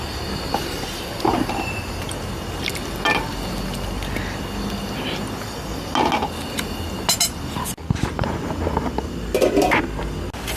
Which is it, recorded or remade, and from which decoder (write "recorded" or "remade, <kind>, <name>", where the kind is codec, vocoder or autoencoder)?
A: recorded